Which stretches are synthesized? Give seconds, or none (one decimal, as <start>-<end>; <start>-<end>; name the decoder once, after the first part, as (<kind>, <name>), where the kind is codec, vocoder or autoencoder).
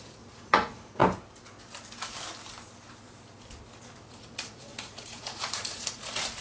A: 0.0-1.0 (vocoder, Vocos); 4.1-6.4